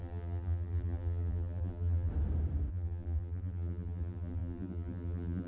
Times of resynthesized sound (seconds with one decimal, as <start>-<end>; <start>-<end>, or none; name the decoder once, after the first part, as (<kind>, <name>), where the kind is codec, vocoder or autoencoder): 0.0-2.1 (vocoder, BigVGAN v2); 2.7-5.5